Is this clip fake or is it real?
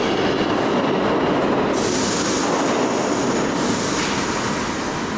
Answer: real